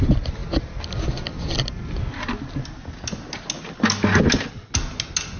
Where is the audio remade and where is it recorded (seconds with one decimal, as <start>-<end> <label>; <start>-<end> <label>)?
0.0-5.4 recorded